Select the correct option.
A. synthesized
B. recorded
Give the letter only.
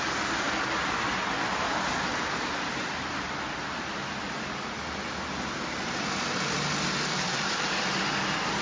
B